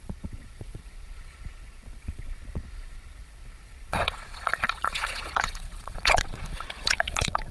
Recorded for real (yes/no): no